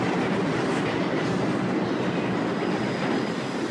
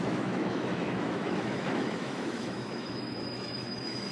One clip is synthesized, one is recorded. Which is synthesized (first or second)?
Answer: second